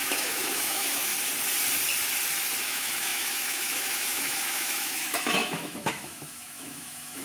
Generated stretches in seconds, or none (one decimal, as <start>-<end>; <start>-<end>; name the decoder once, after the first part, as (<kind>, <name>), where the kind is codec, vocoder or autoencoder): 0.0-1.1 (autoencoder, DAC-VAE); 2.6-7.2